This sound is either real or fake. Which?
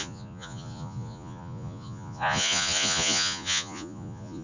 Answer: fake